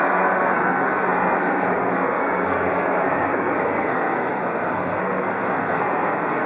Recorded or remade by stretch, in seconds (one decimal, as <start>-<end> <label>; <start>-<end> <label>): 0.0-6.5 remade